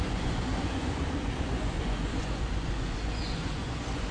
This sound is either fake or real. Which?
fake